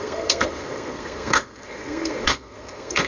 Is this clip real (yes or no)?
no